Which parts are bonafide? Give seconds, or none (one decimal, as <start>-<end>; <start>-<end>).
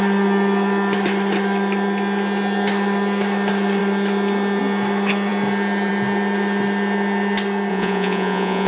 0.0-7.7